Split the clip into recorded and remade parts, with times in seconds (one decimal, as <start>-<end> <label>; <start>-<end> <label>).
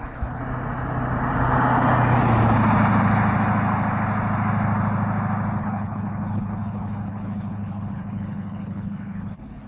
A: 0.0-0.4 remade; 0.4-5.6 recorded; 5.6-9.7 remade